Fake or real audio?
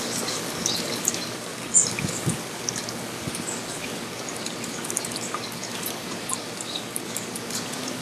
fake